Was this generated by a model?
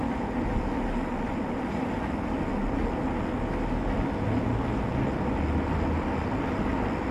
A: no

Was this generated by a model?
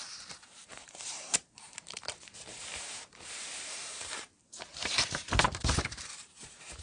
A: yes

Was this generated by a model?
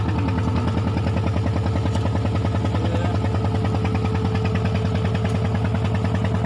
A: no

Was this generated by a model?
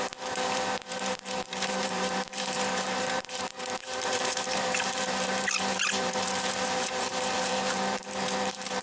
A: yes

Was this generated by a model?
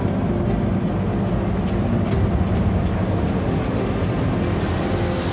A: no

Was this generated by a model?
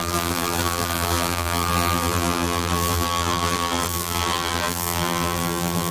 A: yes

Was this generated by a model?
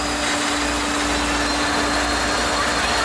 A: no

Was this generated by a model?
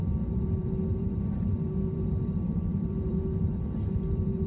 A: yes